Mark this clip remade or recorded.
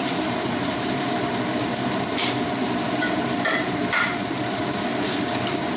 remade